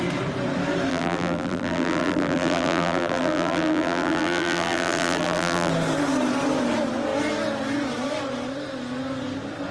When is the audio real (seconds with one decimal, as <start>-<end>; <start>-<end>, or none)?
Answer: 0.0-0.9; 5.7-9.7